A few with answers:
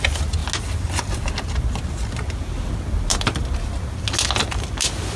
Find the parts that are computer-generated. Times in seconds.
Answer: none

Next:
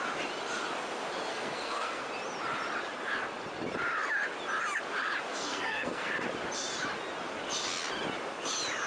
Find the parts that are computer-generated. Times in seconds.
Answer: 1.3-2.1 (codec, SNAC); 5.3-6.1

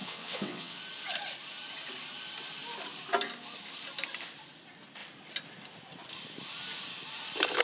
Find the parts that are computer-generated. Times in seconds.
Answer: 0.0-0.8 (vocoder, WaveNeXt)

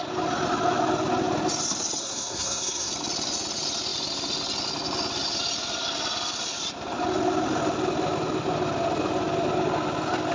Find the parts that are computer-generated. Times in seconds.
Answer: 2.0-2.9 (codec, SNAC)

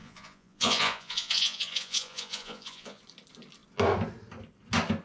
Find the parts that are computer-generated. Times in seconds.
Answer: 0.0-3.0 (vocoder, Vocos)